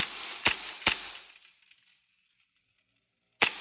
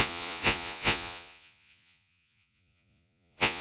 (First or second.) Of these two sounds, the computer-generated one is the second